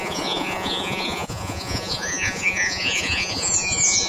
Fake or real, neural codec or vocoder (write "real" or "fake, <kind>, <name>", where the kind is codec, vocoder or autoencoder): fake, vocoder, Vocos